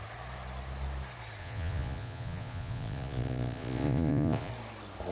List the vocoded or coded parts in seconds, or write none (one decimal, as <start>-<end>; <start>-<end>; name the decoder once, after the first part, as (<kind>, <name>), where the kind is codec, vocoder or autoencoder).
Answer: 1.4-4.5 (vocoder, Vocos)